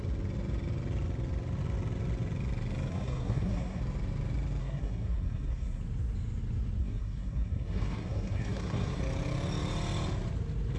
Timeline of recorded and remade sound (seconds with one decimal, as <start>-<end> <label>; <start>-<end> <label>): 0.0-2.9 recorded; 2.9-3.8 remade; 3.8-4.6 recorded; 4.6-5.8 remade; 5.8-6.8 recorded; 6.8-9.0 remade; 9.0-10.8 recorded